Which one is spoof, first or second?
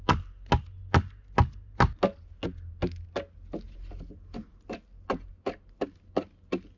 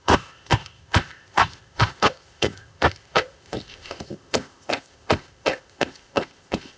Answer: second